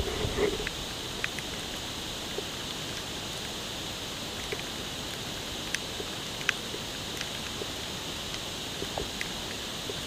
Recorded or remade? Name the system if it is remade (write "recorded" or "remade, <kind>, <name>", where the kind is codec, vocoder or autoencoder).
recorded